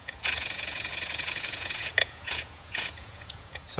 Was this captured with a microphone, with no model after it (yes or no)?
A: no